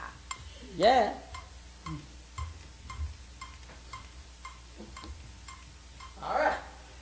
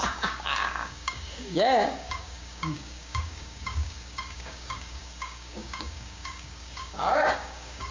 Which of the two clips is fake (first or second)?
second